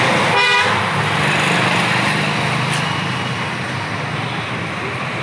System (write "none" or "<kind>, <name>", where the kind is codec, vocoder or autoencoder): none